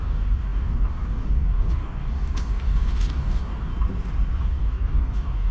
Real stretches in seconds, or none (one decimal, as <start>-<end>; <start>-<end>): 3.7-4.4